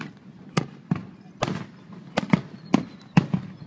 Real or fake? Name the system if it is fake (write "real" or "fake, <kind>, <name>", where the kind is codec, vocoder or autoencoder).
real